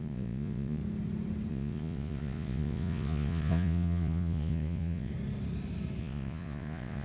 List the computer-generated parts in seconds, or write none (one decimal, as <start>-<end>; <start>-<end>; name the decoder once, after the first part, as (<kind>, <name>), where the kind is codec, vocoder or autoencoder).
0.0-0.8 (vocoder, Vocos); 1.5-5.1; 6.0-7.0